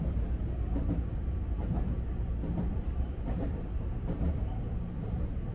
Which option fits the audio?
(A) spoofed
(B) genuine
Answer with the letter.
A